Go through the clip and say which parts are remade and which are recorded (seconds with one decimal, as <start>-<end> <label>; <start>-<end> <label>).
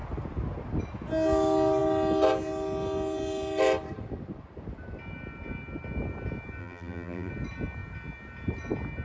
0.0-6.6 recorded; 6.6-7.3 remade; 7.3-9.0 recorded